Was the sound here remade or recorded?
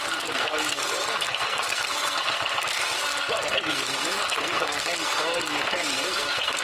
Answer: remade